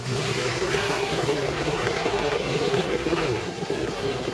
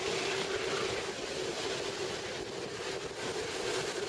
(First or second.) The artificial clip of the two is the first